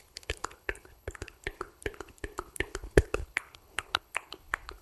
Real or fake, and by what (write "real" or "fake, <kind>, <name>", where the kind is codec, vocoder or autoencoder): fake, codec, HILCodec